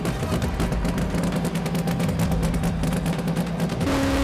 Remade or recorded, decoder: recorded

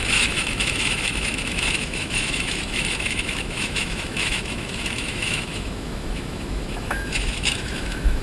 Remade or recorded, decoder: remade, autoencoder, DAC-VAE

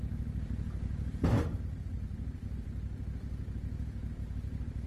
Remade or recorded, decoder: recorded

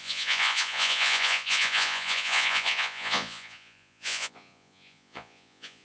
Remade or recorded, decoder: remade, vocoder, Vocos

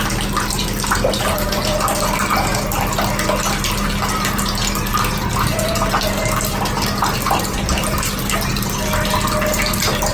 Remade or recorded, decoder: recorded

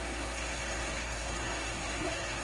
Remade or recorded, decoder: remade, codec, SNAC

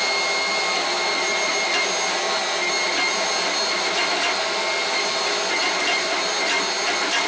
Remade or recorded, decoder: recorded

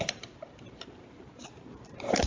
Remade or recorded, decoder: remade, vocoder, BigVGAN v2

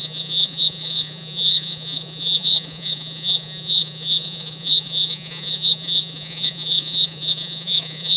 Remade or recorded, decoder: remade, vocoder, Vocos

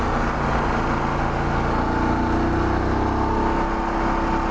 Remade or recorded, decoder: recorded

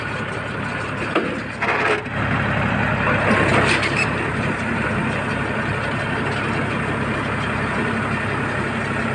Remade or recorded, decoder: recorded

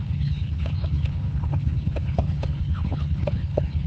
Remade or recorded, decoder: remade, codec, HILCodec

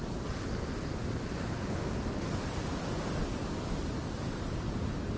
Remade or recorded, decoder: recorded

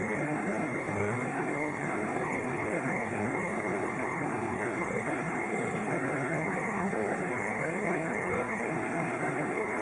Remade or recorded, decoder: remade, codec, SNAC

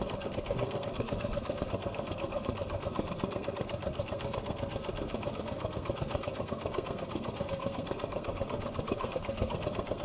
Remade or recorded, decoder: remade, codec, SNAC